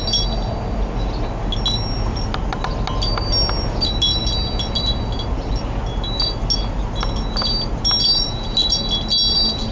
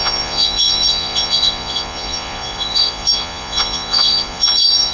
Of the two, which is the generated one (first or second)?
second